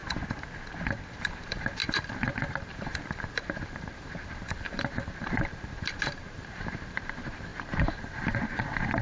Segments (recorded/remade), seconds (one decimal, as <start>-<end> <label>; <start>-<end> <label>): 0.0-1.2 recorded; 1.2-9.0 remade